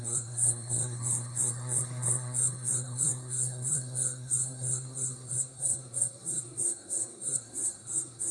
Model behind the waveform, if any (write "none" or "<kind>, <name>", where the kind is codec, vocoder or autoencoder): codec, SNAC